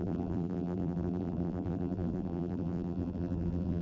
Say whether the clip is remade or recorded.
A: remade